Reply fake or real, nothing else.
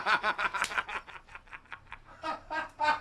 fake